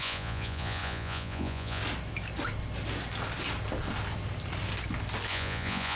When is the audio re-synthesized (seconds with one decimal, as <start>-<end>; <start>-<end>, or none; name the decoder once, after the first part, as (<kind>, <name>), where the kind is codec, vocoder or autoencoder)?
0.0-1.8 (vocoder, Vocos); 5.3-6.0